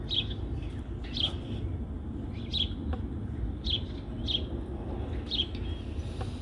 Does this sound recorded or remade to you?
recorded